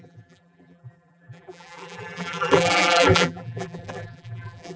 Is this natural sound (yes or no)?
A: no